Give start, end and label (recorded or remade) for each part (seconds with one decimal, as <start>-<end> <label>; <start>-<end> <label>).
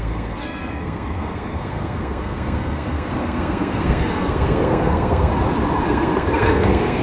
0.0-5.3 remade; 5.3-5.8 recorded; 5.8-7.0 remade